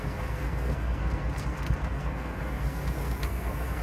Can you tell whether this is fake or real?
fake